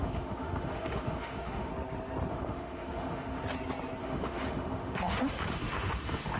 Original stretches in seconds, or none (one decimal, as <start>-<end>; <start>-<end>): 1.7-2.3; 3.4-4.0